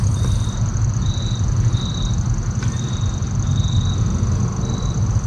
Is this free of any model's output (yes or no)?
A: yes